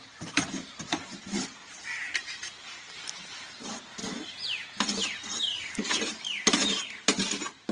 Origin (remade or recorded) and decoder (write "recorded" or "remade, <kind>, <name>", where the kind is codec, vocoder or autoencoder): remade, vocoder, BigVGAN v2